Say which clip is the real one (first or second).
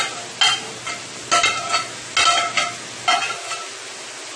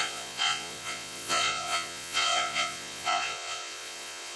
first